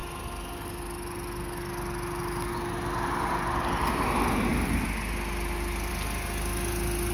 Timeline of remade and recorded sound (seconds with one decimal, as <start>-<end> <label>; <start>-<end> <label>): 0.0-7.1 recorded